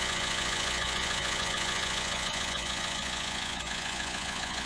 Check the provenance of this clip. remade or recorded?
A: remade